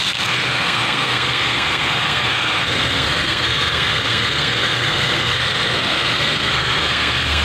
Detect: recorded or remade remade